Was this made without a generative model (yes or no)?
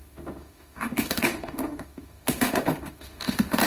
no